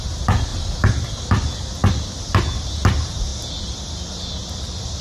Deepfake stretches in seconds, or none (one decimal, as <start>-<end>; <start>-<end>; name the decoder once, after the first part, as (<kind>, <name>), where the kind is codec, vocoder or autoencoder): none